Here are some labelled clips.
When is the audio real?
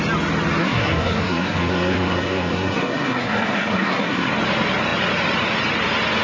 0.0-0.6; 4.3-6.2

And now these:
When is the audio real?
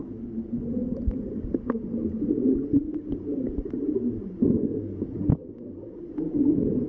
0.0-3.3; 4.1-6.9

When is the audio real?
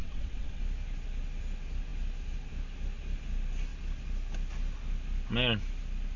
0.6-6.2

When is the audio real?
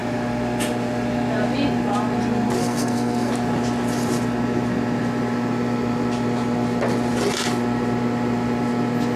0.0-2.6; 3.3-9.2